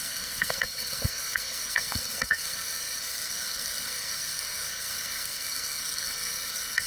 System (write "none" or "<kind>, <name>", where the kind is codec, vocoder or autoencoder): codec, SNAC